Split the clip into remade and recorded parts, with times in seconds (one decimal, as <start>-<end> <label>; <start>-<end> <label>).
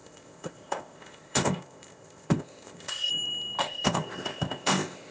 0.0-3.1 remade; 3.1-3.6 recorded; 3.6-5.1 remade